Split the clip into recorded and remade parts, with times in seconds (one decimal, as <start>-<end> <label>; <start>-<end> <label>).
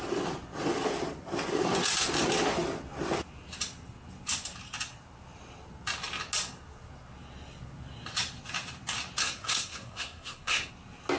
0.0-9.2 recorded; 9.2-10.7 remade; 10.7-11.2 recorded